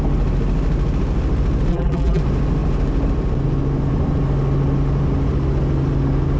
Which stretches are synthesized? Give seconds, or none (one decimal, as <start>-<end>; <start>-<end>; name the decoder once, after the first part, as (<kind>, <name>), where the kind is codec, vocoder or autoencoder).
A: 1.7-2.2 (vocoder, BigVGAN v2)